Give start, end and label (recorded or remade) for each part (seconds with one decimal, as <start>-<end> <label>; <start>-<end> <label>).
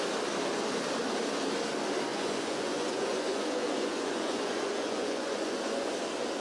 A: 0.0-2.1 recorded; 2.1-5.9 remade; 5.9-6.4 recorded